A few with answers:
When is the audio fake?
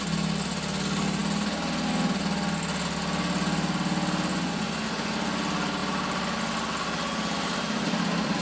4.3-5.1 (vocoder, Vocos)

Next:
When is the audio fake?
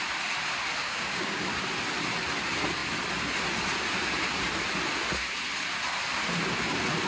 0.8-1.4 (codec, DAC)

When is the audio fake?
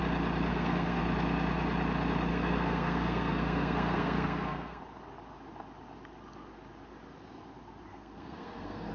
0.5-1.0 (codec, SNAC); 2.3-4.8; 7.9-8.9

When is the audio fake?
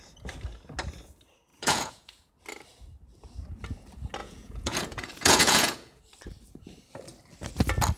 1.5-2.3 (vocoder, Vocos); 4.2-6.0